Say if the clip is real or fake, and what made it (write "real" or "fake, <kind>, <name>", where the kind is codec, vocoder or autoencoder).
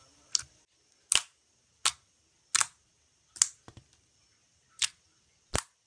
real